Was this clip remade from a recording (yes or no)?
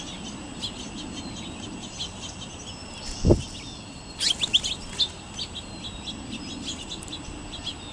no